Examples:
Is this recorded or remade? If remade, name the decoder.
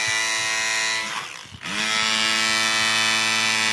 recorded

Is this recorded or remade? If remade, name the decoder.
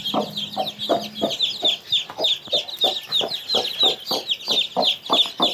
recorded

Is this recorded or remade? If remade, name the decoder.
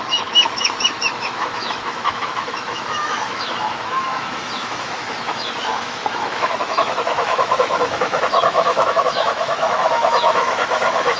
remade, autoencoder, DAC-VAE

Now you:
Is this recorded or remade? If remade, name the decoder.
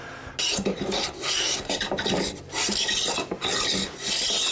recorded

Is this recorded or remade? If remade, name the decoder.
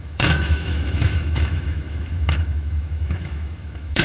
remade, autoencoder, DAC-VAE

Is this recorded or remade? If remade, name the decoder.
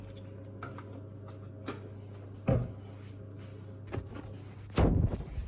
recorded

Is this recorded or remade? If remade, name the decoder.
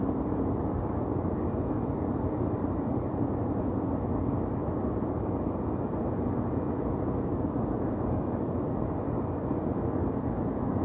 recorded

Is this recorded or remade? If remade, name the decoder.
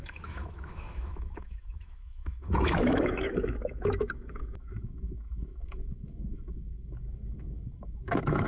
remade, autoencoder, DAC-VAE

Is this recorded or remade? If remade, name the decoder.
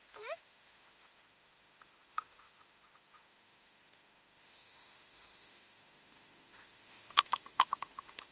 remade, autoencoder, DAC-VAE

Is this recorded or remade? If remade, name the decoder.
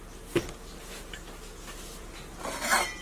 recorded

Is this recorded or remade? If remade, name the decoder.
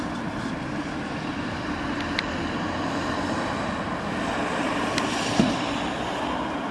recorded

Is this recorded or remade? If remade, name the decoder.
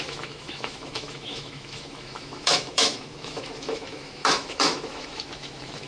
remade, autoencoder, DAC-VAE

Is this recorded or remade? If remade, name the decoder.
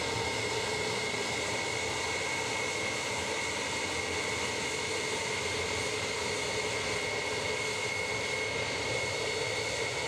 recorded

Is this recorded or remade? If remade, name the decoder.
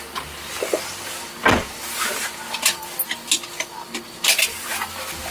recorded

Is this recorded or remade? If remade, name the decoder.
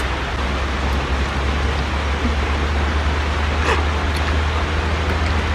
recorded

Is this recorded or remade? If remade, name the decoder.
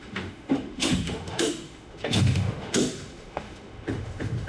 remade, autoencoder, DAC-VAE